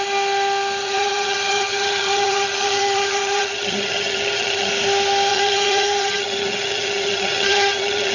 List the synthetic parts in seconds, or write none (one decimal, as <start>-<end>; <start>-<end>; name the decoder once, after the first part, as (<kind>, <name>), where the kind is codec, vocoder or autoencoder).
0.8-4.7 (vocoder, HiFi-GAN); 5.3-8.1